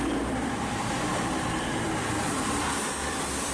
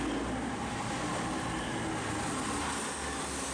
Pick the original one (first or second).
second